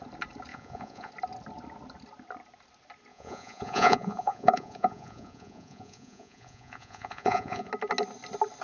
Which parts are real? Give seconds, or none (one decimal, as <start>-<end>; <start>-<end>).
0.0-0.5; 1.1-3.1; 7.7-8.6